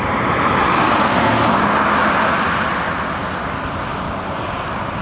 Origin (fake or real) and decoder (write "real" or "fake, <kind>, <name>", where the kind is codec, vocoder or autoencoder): real